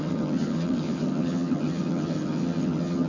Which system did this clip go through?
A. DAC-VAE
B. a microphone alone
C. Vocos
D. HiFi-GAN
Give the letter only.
D